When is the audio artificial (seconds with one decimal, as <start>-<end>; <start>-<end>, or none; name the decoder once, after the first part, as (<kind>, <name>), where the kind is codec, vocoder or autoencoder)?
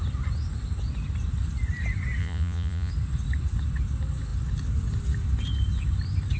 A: 2.2-2.9 (vocoder, Vocos)